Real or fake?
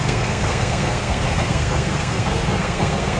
fake